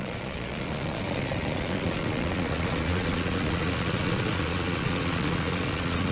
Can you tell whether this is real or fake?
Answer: fake